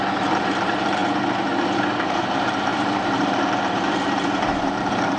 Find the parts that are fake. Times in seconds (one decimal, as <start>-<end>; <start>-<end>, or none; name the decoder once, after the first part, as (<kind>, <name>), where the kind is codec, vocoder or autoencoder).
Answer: 0.0-1.0 (vocoder, BigVGAN v2); 1.9-5.2

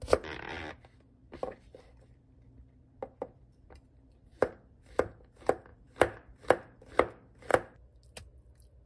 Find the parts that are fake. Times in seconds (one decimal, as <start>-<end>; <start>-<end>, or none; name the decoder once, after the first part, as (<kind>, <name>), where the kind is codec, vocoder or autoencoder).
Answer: 1.2-5.2 (vocoder, BigVGAN v2); 5.7-6.8